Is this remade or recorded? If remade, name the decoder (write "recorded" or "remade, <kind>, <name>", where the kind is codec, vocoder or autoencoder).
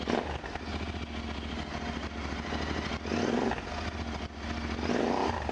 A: recorded